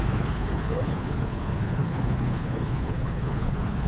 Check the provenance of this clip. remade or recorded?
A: remade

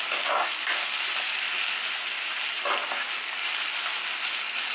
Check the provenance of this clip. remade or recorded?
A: recorded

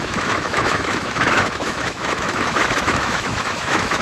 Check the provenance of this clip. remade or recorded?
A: remade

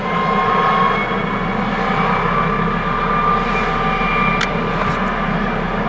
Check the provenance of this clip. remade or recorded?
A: recorded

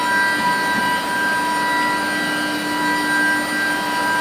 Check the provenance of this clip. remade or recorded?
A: recorded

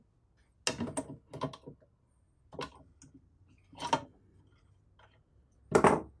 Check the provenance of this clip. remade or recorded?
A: recorded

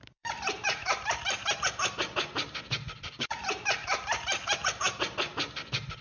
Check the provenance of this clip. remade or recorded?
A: remade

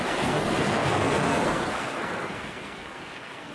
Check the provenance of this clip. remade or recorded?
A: remade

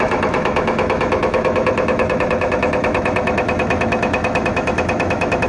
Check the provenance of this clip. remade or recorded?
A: remade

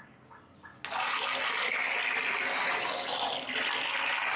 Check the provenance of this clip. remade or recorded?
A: recorded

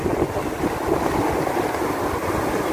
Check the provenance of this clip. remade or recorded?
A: recorded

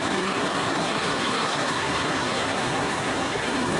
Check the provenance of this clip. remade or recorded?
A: remade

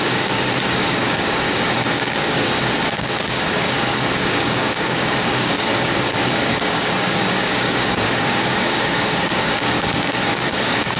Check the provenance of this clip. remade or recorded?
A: remade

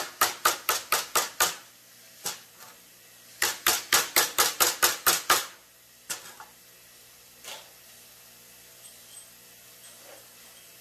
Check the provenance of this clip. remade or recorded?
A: recorded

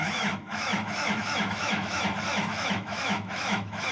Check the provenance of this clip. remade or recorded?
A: remade